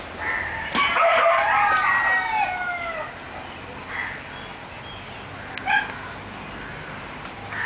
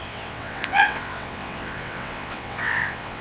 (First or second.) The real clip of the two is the first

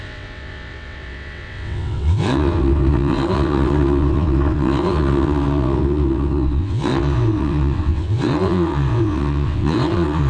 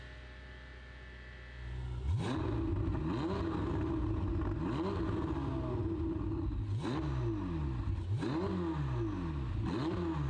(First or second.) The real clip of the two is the second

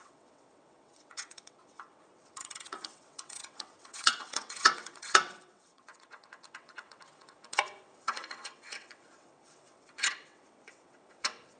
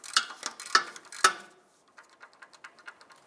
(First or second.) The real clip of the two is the second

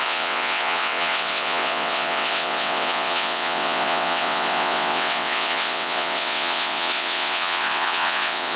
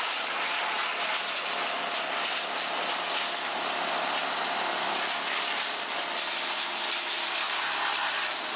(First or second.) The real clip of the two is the second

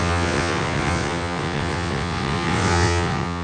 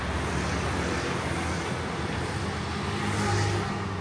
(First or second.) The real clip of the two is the second